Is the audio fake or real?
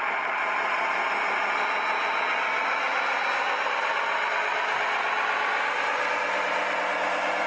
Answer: real